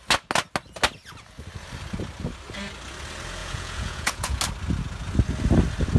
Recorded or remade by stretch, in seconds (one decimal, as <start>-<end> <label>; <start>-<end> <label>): 0.0-3.4 recorded; 3.4-4.4 remade; 4.4-6.0 recorded